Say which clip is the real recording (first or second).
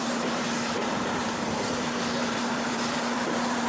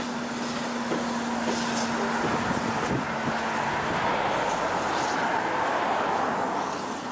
second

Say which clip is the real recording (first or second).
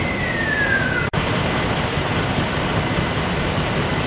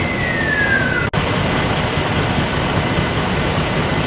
second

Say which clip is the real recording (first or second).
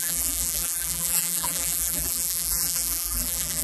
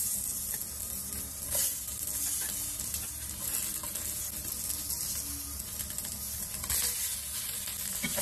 second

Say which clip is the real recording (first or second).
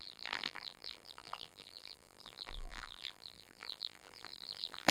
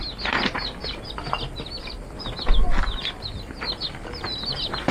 second